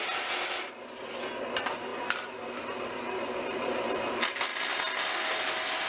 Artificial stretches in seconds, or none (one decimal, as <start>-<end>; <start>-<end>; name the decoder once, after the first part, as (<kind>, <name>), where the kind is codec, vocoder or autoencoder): none

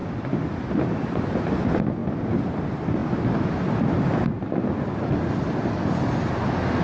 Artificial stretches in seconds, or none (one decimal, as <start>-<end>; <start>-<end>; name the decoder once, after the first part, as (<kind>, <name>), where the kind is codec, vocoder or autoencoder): 0.0-1.3 (vocoder, BigVGAN v2); 3.0-4.2